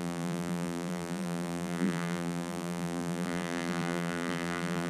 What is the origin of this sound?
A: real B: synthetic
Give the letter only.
B